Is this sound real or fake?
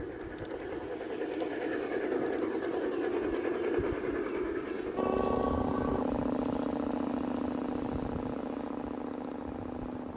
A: real